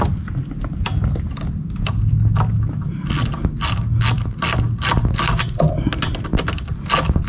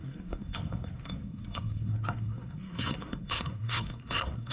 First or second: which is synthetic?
second